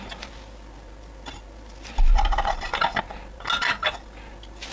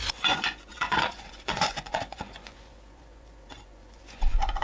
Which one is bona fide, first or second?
first